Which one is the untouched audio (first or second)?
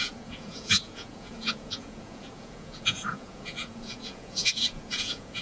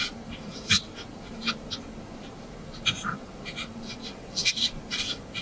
second